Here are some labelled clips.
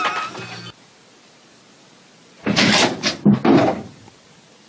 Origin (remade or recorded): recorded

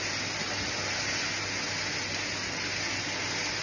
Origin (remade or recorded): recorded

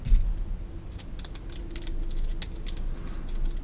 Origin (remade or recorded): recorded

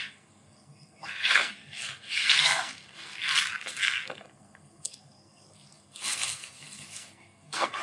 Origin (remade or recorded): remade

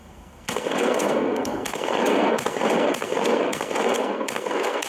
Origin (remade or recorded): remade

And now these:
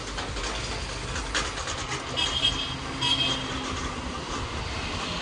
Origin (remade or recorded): recorded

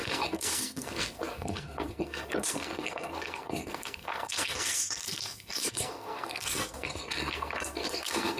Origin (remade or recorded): remade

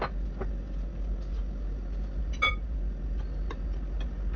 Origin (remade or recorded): recorded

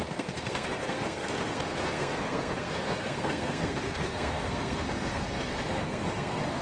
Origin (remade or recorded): remade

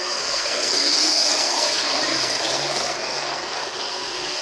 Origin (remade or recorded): remade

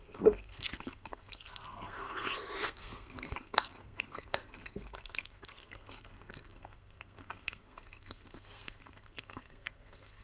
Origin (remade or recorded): remade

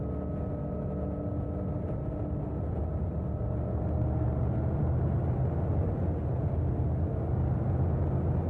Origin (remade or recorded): recorded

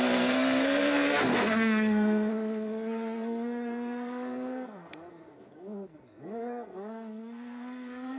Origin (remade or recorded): remade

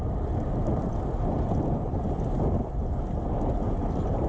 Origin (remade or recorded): recorded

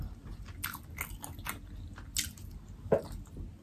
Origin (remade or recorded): recorded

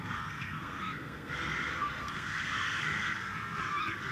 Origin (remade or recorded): remade